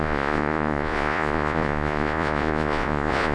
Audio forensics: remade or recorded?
remade